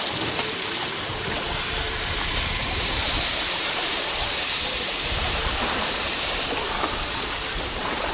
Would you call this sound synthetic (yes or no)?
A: yes